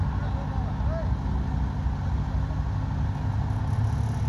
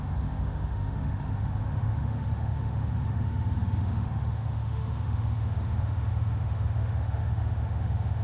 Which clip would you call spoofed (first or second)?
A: second